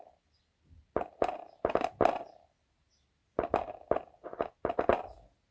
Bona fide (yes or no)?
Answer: yes